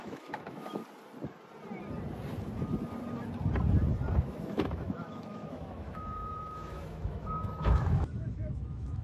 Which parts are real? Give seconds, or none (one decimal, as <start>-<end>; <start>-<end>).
0.8-4.2